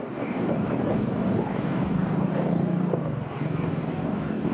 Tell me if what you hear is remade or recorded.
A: remade